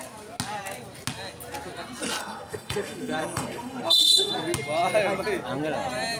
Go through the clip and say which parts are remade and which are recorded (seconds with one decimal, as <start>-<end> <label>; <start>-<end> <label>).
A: 0.0-2.2 recorded; 2.2-4.3 remade; 4.3-6.2 recorded